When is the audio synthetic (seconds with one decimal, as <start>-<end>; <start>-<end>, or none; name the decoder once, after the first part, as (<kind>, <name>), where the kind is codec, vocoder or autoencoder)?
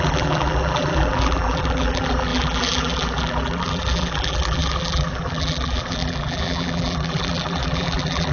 0.0-8.3 (vocoder, BigVGAN v2)